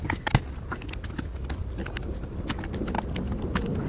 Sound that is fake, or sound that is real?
real